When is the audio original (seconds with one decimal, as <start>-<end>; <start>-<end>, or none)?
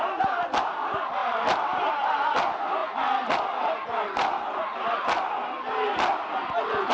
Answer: 0.0-1.2; 1.9-6.9